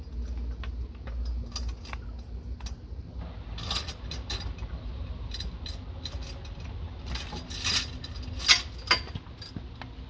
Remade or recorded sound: recorded